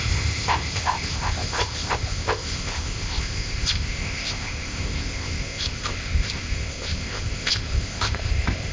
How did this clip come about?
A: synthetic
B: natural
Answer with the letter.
A